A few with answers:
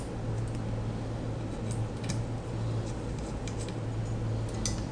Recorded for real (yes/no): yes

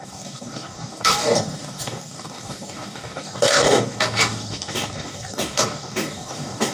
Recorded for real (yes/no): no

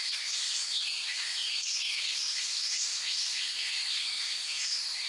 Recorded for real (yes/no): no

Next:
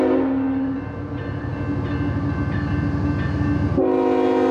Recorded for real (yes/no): yes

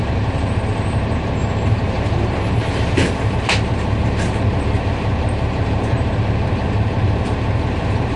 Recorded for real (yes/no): no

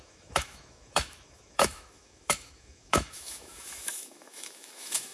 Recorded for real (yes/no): no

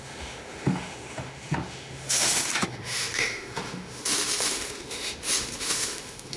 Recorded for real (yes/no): no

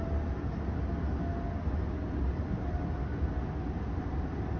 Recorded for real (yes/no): yes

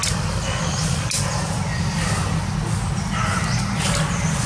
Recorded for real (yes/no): yes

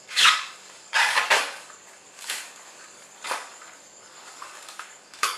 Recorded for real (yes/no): no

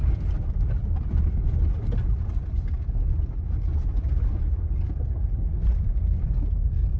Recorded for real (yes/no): yes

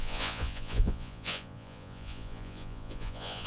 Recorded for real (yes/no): no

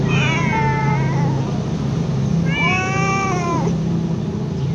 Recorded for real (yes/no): yes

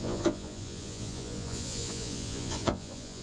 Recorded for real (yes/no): no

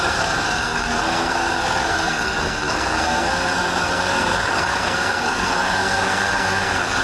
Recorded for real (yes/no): no